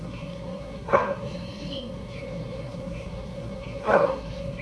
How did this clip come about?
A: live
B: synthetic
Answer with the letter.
B